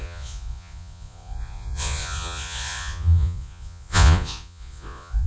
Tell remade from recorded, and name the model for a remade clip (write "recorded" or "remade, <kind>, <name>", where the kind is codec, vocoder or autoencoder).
remade, vocoder, Vocos